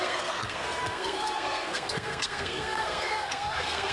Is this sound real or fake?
fake